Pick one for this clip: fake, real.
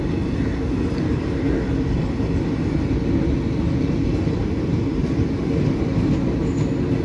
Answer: real